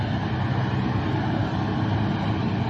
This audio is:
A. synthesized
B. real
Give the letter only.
B